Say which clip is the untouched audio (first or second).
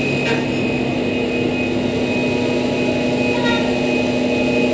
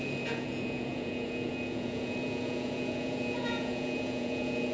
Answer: first